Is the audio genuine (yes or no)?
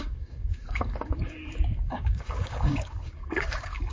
no